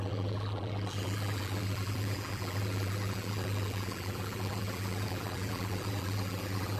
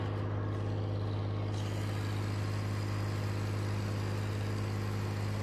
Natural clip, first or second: second